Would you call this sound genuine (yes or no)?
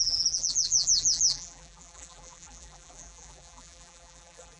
no